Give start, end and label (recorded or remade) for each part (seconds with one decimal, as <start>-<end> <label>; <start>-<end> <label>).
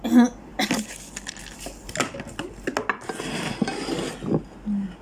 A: 0.0-5.0 recorded